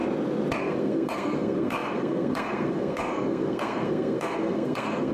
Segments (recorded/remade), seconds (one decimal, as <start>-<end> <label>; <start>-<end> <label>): 0.0-0.6 recorded; 0.6-5.1 remade